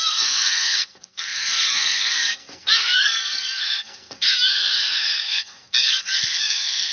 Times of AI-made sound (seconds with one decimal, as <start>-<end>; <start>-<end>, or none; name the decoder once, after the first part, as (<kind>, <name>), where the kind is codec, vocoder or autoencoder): 0.0-6.9 (codec, SNAC)